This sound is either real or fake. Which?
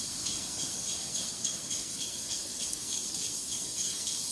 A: fake